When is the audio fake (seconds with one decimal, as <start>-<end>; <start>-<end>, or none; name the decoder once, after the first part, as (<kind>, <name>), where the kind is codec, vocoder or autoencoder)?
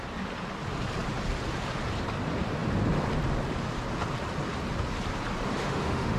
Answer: 5.6-6.2 (autoencoder, DAC-VAE)